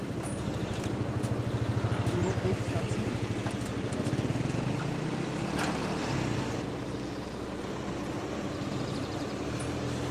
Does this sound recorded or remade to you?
recorded